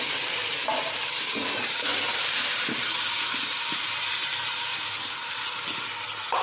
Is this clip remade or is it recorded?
recorded